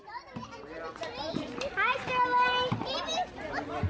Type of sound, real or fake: real